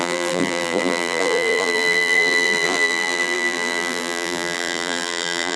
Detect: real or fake fake